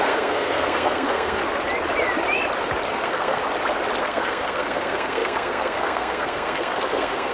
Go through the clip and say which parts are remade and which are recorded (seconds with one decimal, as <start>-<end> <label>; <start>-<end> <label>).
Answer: 0.0-1.4 remade; 1.4-2.9 recorded; 2.9-3.4 remade; 3.4-4.0 recorded; 4.0-7.3 remade